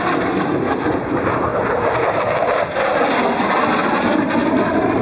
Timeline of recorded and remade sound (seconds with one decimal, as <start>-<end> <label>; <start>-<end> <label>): 0.0-1.5 remade; 1.5-3.8 recorded; 3.8-5.0 remade